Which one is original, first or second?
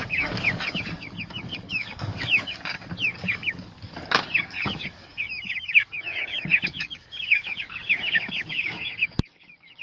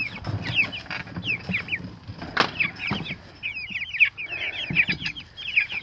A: second